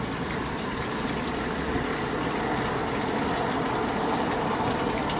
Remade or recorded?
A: recorded